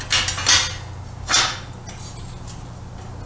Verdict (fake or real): real